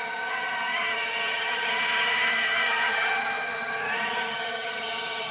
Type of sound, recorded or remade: remade